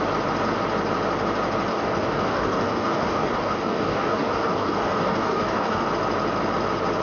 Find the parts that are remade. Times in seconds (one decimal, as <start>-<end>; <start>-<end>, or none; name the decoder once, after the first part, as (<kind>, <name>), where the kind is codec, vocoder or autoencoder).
1.7-5.9 (codec, DAC)